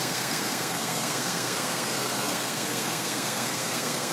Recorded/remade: remade